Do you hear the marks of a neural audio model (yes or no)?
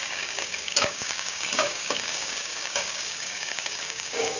yes